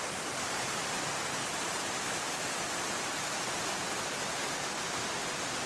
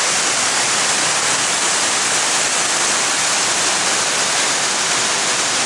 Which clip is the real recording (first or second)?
second